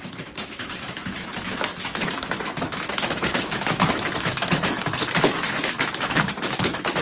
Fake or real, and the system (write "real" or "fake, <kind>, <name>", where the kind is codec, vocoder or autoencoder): fake, autoencoder, DAC-VAE